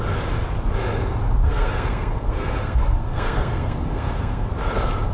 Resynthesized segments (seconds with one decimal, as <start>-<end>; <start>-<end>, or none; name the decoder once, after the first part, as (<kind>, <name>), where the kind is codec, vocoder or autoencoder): 1.4-4.5 (codec, SNAC)